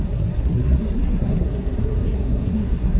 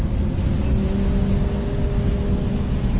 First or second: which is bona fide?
second